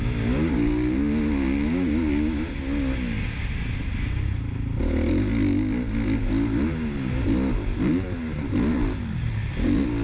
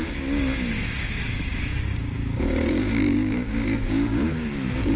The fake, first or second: second